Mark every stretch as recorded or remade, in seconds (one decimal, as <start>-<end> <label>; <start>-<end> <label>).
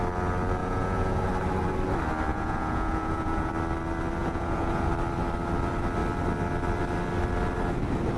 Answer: 0.0-0.6 recorded; 0.6-1.2 remade; 1.2-2.3 recorded; 2.3-3.5 remade; 3.5-4.2 recorded; 4.2-4.9 remade; 4.9-8.2 recorded